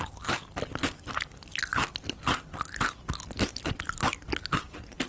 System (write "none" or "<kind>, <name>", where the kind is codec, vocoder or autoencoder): none